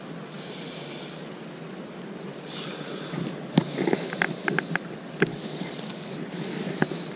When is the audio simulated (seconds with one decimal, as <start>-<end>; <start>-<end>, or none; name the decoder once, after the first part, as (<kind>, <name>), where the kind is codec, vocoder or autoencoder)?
5.3-6.7 (codec, DAC)